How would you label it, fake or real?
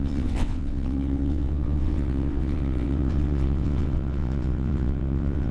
fake